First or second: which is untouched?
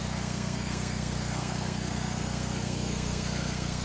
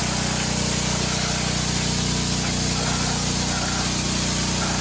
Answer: second